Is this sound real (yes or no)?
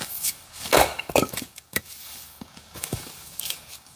no